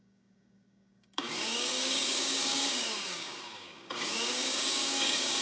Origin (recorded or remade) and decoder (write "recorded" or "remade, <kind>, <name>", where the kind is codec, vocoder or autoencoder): remade, codec, DAC